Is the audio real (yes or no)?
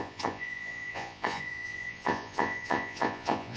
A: no